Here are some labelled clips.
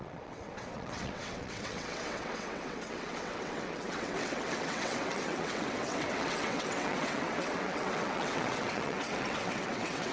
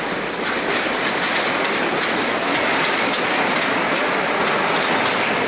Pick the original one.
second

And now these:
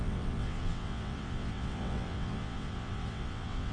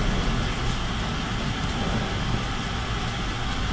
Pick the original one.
second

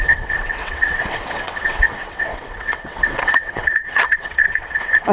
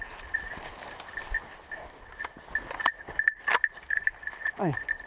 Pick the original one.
second